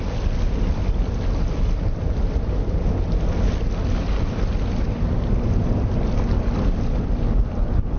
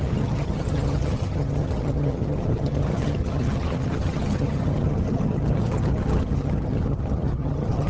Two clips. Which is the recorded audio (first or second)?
first